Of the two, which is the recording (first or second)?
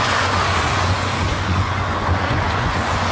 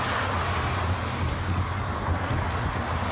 second